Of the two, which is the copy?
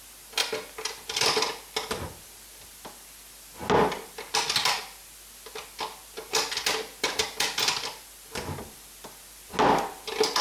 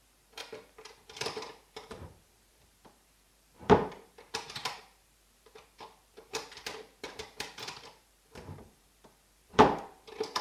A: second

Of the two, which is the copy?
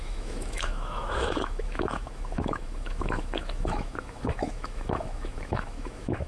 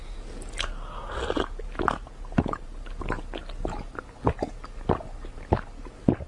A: first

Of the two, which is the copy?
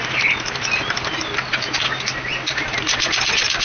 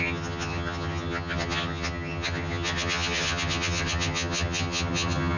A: second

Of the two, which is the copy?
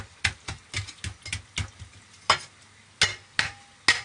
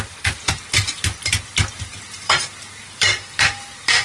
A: second